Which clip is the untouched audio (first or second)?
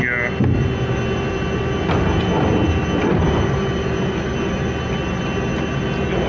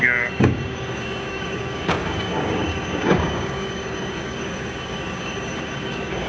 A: first